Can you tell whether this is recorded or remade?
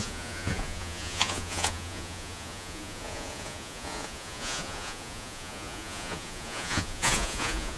remade